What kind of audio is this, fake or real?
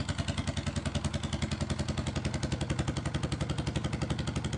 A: real